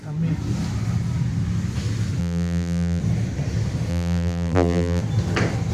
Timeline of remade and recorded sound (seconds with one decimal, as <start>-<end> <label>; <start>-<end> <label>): 0.0-2.2 recorded; 2.2-3.0 remade; 3.0-3.9 recorded; 3.9-5.0 remade; 5.0-5.7 recorded